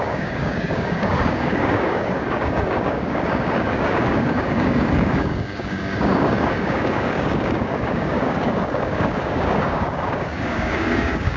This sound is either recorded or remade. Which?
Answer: remade